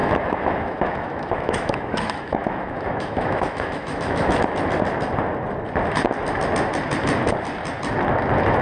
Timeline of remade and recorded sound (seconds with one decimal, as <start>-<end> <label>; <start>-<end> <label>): 0.0-4.4 remade; 4.4-8.6 recorded